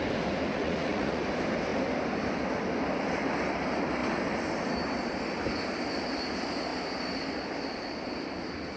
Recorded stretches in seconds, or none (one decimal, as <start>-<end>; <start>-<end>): 0.0-0.5; 1.2-8.8